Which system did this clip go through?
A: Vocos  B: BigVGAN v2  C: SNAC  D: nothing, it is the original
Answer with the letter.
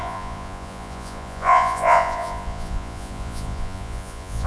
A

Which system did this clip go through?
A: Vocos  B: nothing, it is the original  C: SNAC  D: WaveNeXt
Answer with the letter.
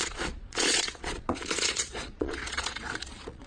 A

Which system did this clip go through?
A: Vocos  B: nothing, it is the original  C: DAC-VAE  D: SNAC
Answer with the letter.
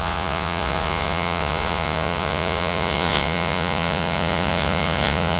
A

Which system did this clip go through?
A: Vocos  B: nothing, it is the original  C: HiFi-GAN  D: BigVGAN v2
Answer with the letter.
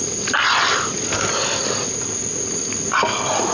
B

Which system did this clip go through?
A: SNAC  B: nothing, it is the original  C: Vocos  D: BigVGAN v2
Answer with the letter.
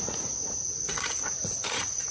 C